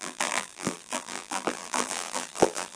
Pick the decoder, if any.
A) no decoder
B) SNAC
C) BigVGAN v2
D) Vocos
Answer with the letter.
C